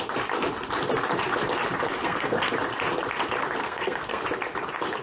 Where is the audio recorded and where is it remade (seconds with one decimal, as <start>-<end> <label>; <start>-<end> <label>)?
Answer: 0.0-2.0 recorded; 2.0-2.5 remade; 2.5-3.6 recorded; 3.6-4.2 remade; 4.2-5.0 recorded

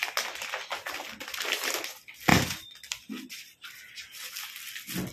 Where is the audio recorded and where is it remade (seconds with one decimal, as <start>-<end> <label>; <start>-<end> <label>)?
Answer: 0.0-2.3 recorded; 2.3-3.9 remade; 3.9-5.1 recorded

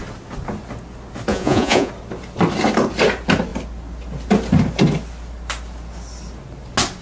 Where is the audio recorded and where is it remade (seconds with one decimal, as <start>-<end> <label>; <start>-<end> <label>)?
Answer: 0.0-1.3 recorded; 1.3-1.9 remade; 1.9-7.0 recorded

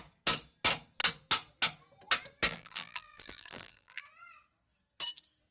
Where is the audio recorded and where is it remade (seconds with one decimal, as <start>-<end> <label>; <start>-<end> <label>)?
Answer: 0.0-2.5 recorded; 2.5-4.0 remade; 4.0-5.5 recorded

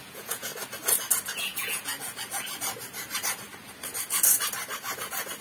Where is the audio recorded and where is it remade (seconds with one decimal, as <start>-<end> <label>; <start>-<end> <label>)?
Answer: 0.0-0.5 remade; 0.5-1.3 recorded; 1.3-1.9 remade; 1.9-5.4 recorded

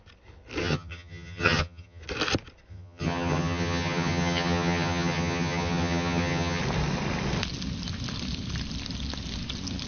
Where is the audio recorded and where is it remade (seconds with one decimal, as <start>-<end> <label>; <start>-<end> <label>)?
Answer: 0.0-0.6 recorded; 0.6-2.0 remade; 2.0-2.7 recorded; 2.7-6.6 remade; 6.6-9.9 recorded